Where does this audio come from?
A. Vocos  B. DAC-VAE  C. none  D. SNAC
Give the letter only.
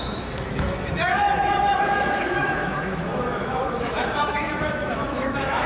B